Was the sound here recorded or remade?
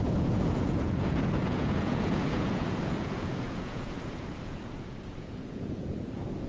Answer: remade